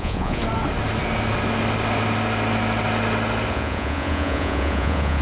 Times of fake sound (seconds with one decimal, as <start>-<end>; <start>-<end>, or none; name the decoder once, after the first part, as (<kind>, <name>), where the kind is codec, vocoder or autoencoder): 0.0-0.4 (vocoder, Vocos); 3.5-5.2